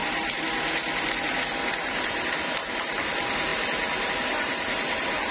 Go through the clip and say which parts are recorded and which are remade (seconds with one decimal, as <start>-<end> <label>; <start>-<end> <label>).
0.0-5.3 recorded